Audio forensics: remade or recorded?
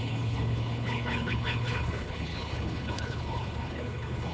remade